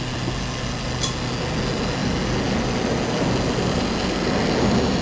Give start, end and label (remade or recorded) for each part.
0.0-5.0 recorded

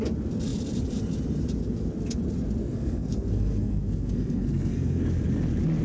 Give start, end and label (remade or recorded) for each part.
0.0-2.6 recorded; 2.6-5.0 remade; 5.0-5.8 recorded

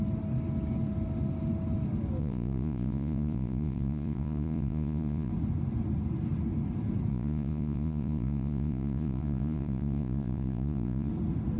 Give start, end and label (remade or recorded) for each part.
0.0-2.2 recorded; 2.2-5.3 remade; 5.3-7.1 recorded; 7.1-11.1 remade; 11.1-11.6 recorded

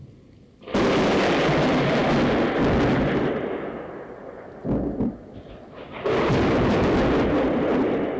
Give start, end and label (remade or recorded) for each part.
0.0-8.2 recorded